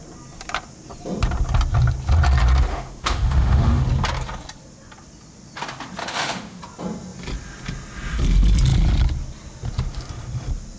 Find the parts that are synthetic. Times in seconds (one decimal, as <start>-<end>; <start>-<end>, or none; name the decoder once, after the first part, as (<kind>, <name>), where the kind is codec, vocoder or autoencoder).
2.7-3.8 (autoencoder, DAC-VAE); 6.0-6.6